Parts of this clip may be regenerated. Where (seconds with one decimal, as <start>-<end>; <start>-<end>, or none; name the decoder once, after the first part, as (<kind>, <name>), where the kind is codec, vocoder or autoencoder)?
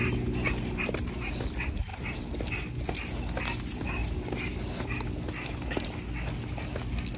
none